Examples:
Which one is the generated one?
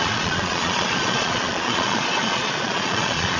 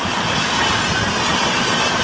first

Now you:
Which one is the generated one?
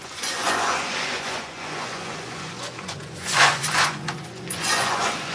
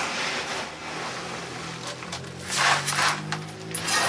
first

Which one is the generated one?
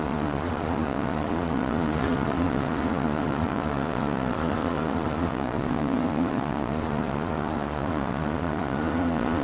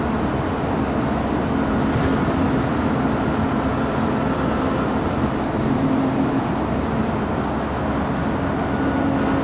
first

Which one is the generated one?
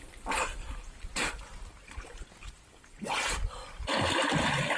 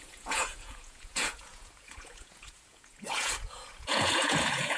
second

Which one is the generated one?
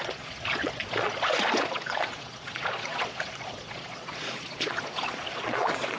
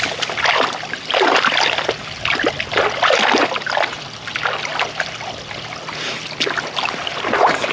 first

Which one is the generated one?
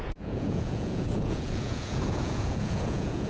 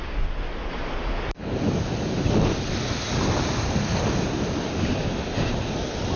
first